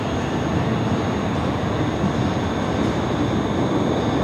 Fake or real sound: real